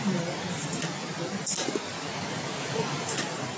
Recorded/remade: recorded